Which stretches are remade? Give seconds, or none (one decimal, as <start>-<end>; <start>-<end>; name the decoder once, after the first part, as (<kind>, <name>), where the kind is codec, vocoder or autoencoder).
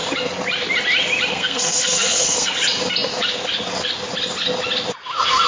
1.3-2.5 (codec, SNAC)